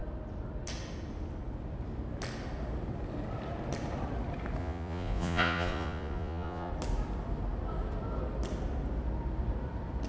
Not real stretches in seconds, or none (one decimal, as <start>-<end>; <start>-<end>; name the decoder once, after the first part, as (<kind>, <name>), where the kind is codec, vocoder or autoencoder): 4.6-6.7 (vocoder, Vocos)